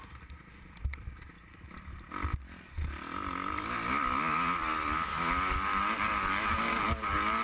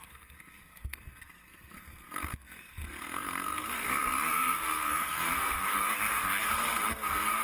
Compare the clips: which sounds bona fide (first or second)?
first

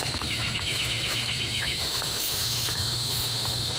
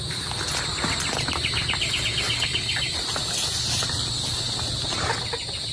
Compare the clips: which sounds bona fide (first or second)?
second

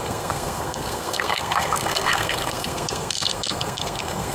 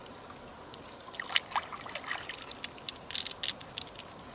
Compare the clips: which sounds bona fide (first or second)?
second